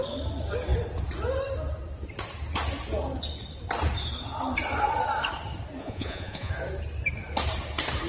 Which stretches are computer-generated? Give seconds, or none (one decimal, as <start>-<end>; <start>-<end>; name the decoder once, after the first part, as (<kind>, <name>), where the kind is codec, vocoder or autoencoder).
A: 5.8-6.5 (vocoder, Vocos)